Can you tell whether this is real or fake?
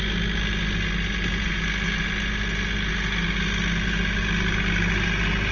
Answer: real